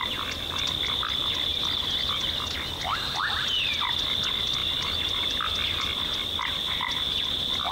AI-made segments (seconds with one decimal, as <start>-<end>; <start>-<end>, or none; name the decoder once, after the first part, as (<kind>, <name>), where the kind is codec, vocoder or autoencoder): none